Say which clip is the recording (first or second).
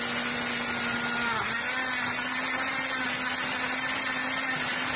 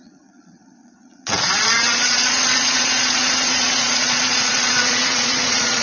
first